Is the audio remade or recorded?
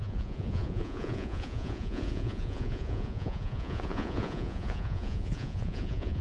remade